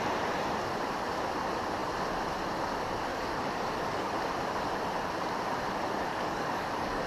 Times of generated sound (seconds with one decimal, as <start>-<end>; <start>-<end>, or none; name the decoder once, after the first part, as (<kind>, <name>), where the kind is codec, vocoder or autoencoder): 3.1-4.1 (codec, DAC); 6.1-7.1